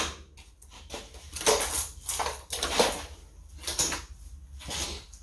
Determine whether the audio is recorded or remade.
recorded